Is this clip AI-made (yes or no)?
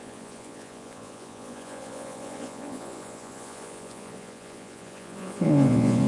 yes